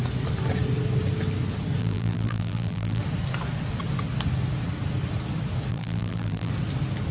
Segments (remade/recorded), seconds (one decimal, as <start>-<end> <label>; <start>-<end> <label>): 0.0-1.8 recorded; 1.8-3.0 remade; 3.0-5.7 recorded; 5.7-6.5 remade; 6.5-7.1 recorded